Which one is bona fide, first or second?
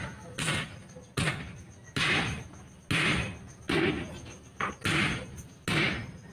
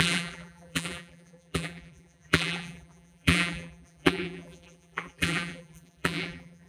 first